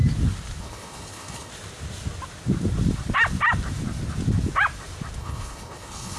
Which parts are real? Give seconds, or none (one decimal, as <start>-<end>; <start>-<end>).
0.0-0.6; 1.5-5.2